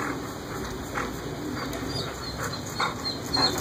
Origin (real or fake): real